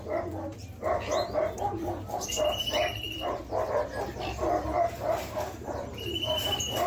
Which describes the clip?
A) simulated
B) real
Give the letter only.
A